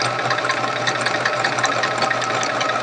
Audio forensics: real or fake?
real